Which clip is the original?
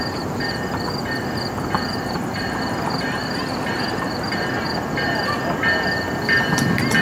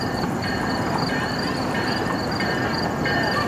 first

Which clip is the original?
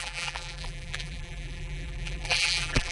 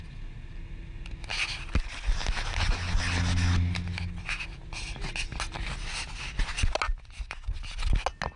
second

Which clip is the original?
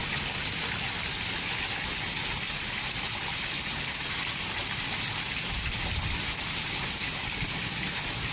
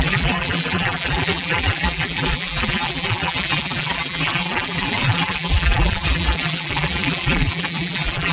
first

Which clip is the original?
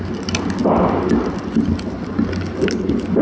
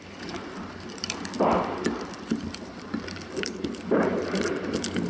first